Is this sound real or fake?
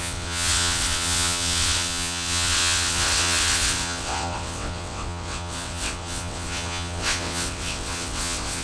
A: fake